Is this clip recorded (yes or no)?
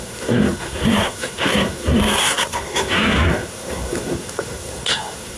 no